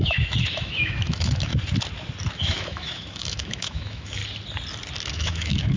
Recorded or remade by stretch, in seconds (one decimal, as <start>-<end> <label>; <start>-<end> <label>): 0.0-1.5 remade; 1.5-2.4 recorded; 2.4-4.2 remade; 4.2-5.1 recorded; 5.1-5.8 remade